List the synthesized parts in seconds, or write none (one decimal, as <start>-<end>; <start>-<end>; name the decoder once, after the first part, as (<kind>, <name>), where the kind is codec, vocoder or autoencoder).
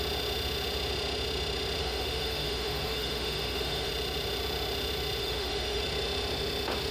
1.8-3.9 (autoencoder, DAC-VAE); 5.2-5.8